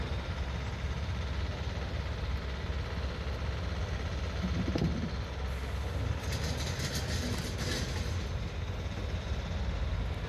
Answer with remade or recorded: recorded